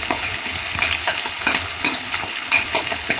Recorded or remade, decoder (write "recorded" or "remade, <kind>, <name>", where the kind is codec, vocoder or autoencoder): remade, codec, HILCodec